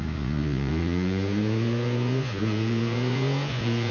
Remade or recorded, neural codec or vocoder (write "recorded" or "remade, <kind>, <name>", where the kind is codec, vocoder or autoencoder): remade, vocoder, Vocos